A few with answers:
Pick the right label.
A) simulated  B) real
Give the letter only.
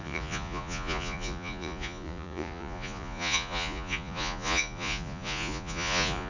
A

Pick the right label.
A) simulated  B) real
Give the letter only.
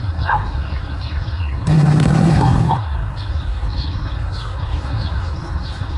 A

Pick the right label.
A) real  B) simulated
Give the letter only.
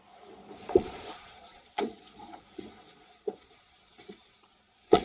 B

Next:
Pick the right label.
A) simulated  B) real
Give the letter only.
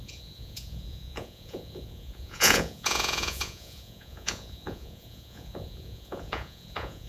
A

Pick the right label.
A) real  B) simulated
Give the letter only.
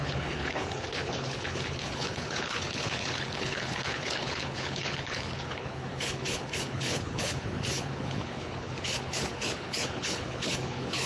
B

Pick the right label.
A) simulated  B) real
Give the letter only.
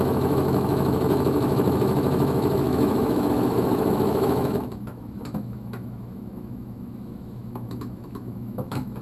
A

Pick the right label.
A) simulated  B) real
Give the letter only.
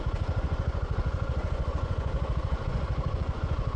A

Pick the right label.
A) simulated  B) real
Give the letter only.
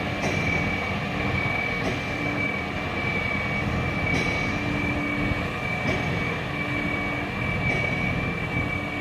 B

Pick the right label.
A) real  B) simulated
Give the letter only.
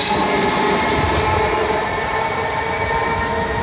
A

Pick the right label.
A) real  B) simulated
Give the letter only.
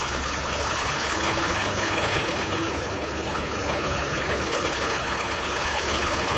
B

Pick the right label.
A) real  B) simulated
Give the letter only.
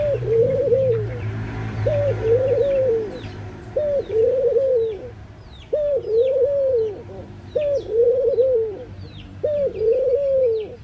B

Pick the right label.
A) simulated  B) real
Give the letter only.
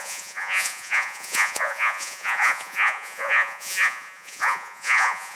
A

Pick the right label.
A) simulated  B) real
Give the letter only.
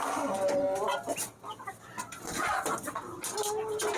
B